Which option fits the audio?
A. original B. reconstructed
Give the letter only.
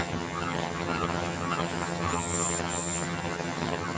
B